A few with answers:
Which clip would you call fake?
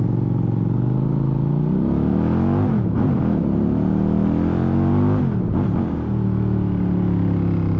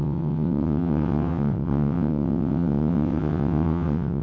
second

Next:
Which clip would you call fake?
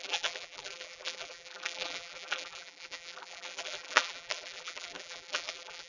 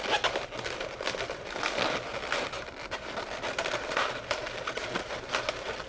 first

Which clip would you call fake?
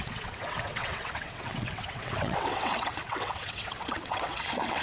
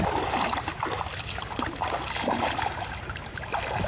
first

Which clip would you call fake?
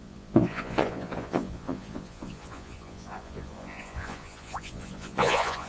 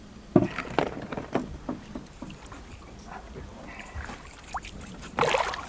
first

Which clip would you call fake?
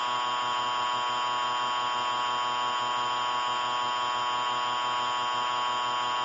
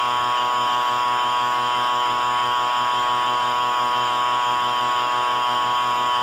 second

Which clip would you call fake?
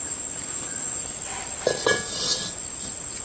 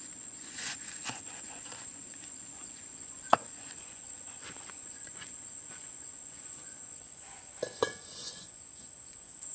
second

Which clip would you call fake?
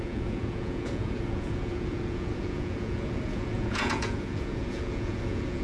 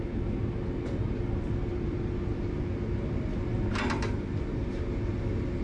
first